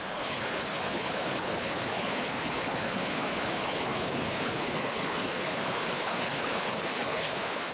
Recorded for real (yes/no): no